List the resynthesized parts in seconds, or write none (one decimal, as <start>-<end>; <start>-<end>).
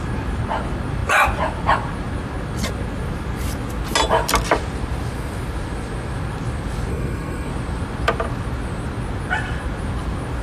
6.9-7.5